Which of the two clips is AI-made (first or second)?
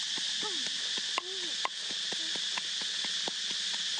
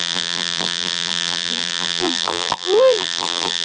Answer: second